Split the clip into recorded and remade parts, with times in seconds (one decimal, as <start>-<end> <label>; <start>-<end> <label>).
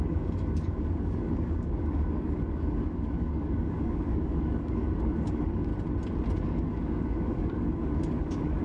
0.0-5.7 remade; 5.7-6.4 recorded; 6.4-8.6 remade